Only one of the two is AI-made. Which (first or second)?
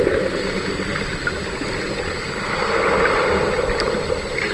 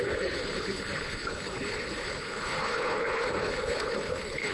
second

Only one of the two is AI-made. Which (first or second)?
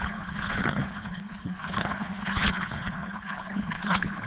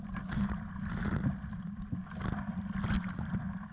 first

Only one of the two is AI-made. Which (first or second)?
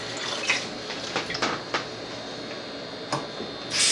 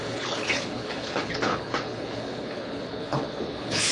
second